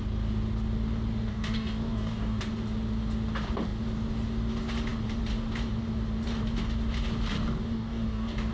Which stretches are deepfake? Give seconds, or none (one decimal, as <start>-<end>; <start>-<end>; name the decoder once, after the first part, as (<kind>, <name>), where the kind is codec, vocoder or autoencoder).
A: 1.3-2.4 (codec, DAC); 7.7-8.5